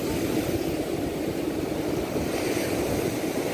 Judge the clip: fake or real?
real